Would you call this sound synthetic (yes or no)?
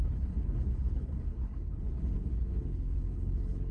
yes